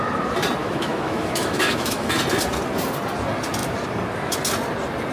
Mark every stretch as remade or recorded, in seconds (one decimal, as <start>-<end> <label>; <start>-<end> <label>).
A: 0.0-0.6 recorded; 0.6-2.2 remade; 2.2-5.1 recorded